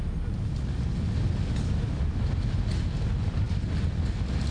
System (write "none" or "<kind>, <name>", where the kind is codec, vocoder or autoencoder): none